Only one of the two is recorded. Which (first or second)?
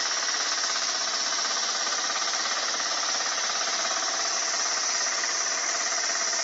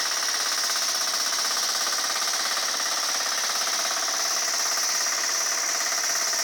second